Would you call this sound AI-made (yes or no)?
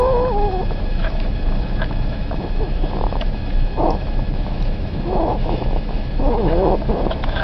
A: yes